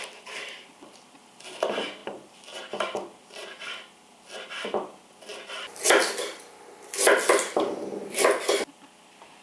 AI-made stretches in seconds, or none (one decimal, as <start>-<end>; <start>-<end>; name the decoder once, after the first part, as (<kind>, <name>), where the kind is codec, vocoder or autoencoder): none